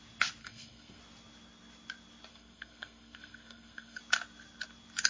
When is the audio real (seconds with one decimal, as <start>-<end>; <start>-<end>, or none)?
0.0-0.4; 1.0-2.3; 4.0-5.1